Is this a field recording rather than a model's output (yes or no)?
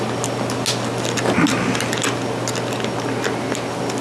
yes